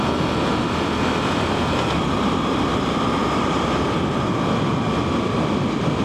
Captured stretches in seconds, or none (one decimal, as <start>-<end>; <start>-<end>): 0.0-6.0